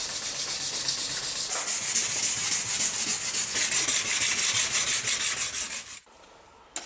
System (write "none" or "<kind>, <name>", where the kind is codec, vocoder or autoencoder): none